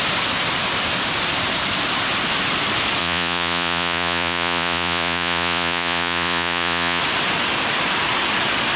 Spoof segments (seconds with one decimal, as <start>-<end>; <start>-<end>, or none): 3.0-7.0